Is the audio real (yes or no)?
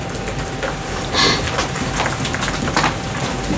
yes